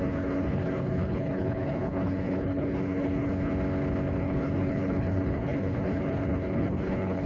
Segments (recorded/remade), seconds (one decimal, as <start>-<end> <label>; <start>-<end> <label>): 0.0-3.5 remade; 3.5-4.2 recorded; 4.2-7.3 remade